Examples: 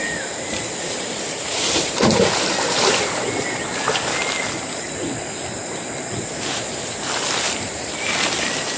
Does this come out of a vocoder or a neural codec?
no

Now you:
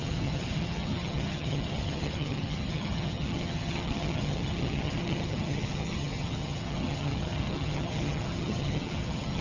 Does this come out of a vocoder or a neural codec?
yes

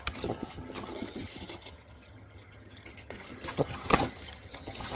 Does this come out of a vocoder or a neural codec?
yes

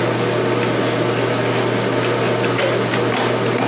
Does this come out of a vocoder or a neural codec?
no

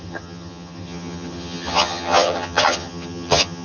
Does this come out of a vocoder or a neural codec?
yes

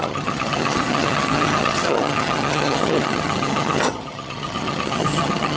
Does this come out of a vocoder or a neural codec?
yes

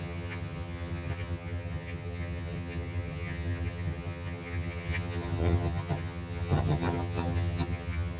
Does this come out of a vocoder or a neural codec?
yes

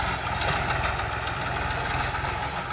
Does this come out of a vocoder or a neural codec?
no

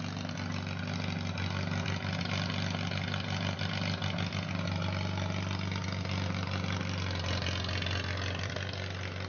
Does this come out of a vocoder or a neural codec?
no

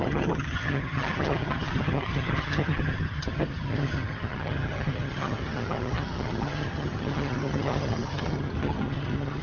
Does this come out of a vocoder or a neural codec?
yes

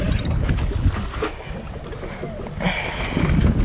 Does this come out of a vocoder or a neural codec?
no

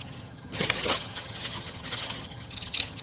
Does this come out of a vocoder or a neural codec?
yes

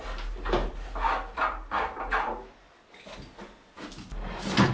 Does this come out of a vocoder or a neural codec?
no